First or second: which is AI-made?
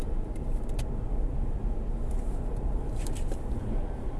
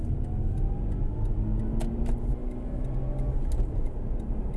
first